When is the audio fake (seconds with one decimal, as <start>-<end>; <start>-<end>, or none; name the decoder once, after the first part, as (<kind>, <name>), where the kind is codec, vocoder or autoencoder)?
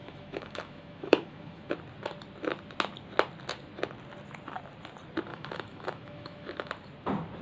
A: 0.0-1.7 (autoencoder, DAC-VAE); 5.3-6.7